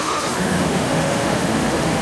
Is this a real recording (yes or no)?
no